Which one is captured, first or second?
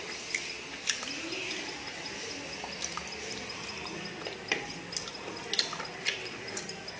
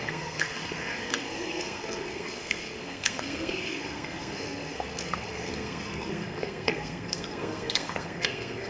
first